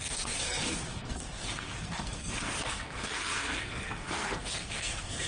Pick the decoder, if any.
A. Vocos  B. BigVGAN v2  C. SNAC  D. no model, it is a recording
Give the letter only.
C